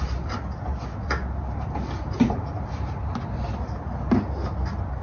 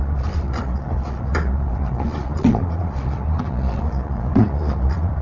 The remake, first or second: second